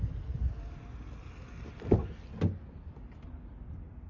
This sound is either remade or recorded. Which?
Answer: recorded